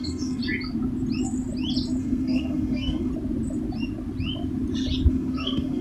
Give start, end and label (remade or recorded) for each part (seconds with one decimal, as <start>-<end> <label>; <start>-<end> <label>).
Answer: 0.0-0.4 remade; 0.4-2.0 recorded; 2.0-3.1 remade; 3.1-5.1 recorded; 5.1-5.8 remade